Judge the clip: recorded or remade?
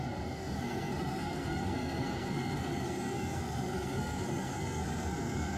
remade